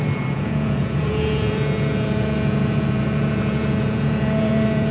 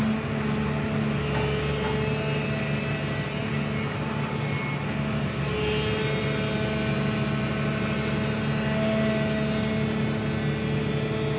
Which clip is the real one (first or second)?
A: second